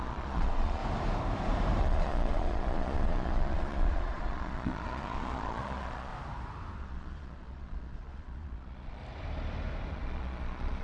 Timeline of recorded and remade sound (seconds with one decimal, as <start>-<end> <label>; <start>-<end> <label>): 0.0-0.8 remade; 0.8-1.8 recorded; 1.8-6.1 remade; 6.1-6.8 recorded; 6.8-9.0 remade; 9.0-9.9 recorded; 9.9-10.8 remade